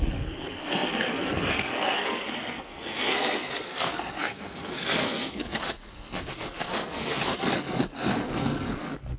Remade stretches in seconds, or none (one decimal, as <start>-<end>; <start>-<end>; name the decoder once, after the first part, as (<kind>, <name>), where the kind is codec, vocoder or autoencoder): 0.0-9.2 (codec, SNAC)